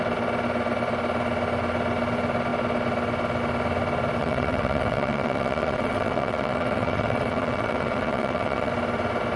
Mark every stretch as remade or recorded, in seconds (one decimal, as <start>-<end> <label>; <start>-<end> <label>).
0.0-4.2 recorded; 4.2-8.7 remade; 8.7-9.4 recorded